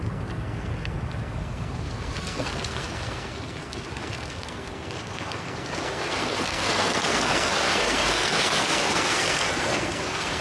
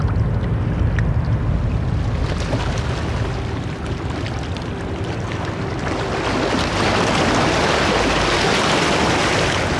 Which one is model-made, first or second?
first